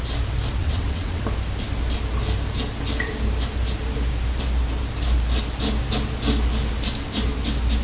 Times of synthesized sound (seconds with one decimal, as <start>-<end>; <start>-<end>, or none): 0.6-1.2